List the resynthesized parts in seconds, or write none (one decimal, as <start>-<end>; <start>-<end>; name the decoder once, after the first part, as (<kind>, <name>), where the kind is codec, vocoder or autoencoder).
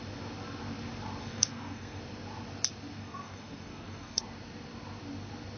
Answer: 1.2-2.0 (codec, SNAC); 3.0-4.2